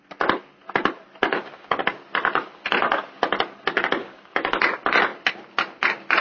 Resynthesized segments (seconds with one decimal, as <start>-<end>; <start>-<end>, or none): 1.3-1.8; 4.0-4.6